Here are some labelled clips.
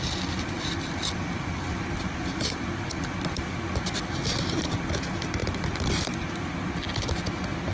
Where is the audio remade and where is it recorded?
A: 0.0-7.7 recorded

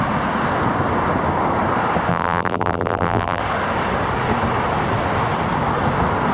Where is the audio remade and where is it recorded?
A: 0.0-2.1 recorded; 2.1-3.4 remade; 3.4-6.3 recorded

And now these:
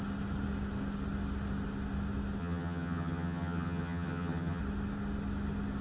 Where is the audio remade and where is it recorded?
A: 0.0-2.4 recorded; 2.4-4.6 remade; 4.6-5.8 recorded

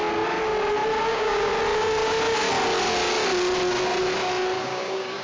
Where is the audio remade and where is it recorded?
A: 0.0-1.1 recorded; 1.1-1.5 remade; 1.5-4.6 recorded; 4.6-5.2 remade

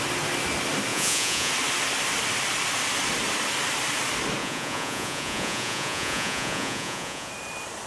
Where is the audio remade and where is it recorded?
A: 0.0-0.9 recorded; 0.9-1.5 remade; 1.5-4.4 recorded; 4.4-7.3 remade; 7.3-7.9 recorded

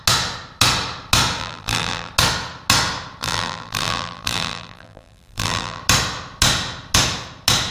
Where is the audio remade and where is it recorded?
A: 0.0-1.4 recorded; 1.4-2.1 remade; 2.1-3.2 recorded; 3.2-5.8 remade; 5.8-7.7 recorded

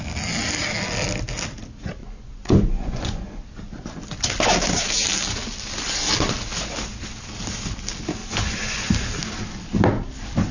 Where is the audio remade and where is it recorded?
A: 0.0-2.0 recorded; 2.0-3.4 remade; 3.4-8.2 recorded; 8.2-8.8 remade; 8.8-10.5 recorded

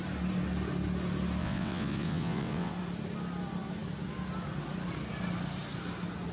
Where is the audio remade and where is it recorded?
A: 0.0-1.4 recorded; 1.4-2.7 remade; 2.7-6.3 recorded